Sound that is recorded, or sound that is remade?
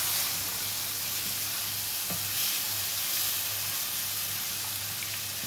recorded